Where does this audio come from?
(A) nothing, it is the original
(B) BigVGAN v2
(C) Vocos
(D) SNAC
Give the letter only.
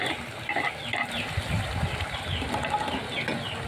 A